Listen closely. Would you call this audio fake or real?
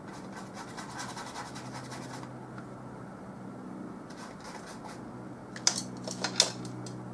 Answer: real